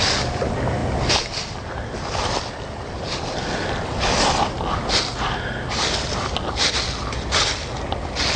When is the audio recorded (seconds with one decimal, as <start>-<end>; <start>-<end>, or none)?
0.0-8.4